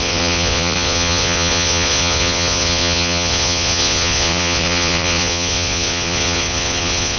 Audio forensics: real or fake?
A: fake